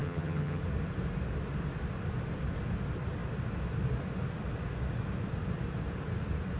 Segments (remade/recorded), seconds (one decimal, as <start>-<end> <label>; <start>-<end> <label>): 0.0-0.6 remade; 0.6-6.6 recorded